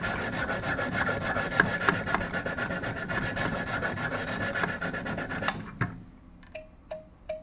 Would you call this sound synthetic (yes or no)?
no